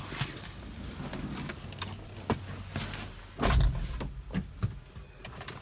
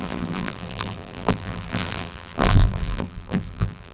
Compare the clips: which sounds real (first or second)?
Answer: first